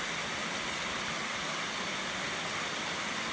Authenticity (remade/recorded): recorded